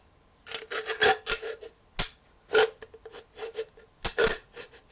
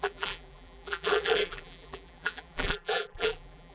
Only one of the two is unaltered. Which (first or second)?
first